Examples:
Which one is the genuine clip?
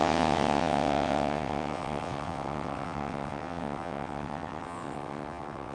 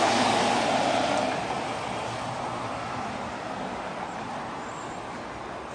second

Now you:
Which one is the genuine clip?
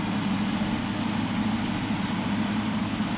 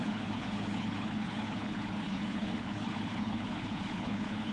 first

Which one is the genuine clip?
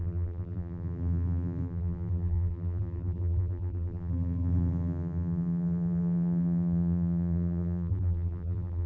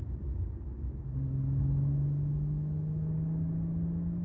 second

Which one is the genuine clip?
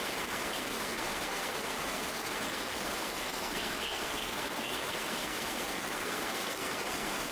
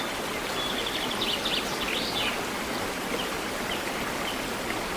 second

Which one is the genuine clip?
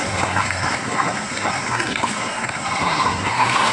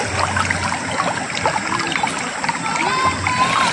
second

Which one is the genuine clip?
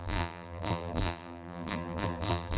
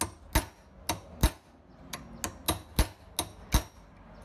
second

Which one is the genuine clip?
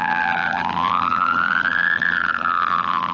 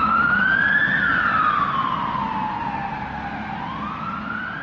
second